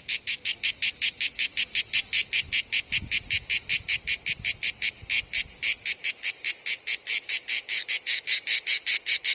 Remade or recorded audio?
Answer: recorded